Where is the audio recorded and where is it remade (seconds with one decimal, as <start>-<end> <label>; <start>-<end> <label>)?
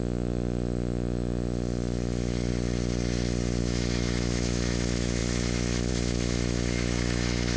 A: 0.0-2.5 remade; 2.5-3.6 recorded; 3.6-7.6 remade